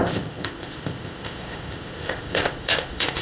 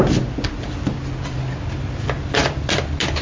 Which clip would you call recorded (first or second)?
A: second